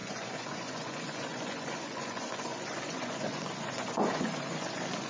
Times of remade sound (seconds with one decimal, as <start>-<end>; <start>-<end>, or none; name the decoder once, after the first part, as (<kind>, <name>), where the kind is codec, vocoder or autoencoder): 0.0-5.1 (vocoder, Vocos)